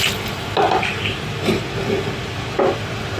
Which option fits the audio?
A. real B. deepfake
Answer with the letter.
A